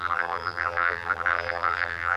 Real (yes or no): no